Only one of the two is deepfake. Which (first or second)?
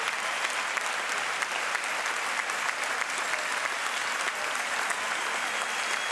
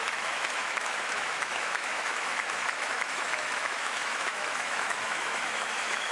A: second